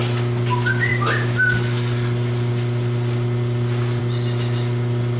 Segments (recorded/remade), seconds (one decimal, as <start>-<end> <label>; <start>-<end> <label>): 0.0-5.2 recorded